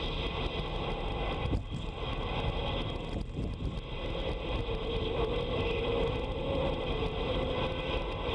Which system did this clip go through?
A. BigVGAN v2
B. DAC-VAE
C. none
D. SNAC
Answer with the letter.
C